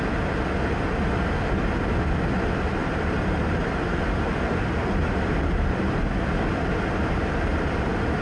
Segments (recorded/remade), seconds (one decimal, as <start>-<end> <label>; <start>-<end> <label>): 0.0-2.8 recorded; 2.8-6.0 remade; 6.0-8.2 recorded